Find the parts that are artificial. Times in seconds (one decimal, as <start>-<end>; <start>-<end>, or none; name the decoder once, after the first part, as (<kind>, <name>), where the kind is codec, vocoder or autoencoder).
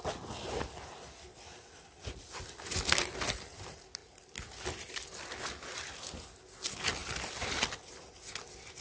none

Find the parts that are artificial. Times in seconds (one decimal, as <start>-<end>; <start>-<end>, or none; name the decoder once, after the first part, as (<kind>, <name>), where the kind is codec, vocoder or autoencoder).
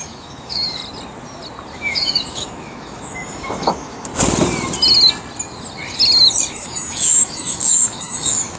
0.0-0.8 (autoencoder, DAC-VAE); 1.7-4.1; 6.5-8.6